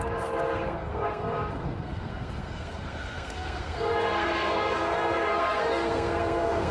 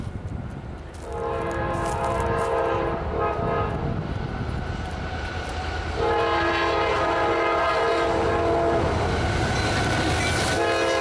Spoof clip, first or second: first